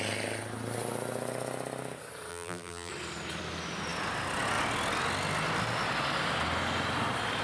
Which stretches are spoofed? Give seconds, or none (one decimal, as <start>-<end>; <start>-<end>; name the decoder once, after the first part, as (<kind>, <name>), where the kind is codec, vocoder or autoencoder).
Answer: 2.3-2.9 (vocoder, BigVGAN v2)